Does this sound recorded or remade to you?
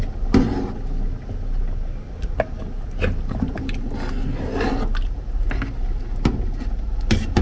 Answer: recorded